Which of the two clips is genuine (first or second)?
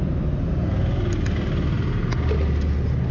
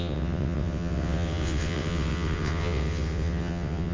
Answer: first